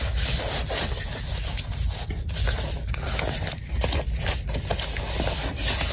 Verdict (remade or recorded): recorded